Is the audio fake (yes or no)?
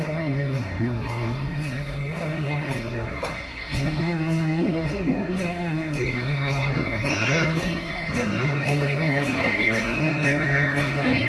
yes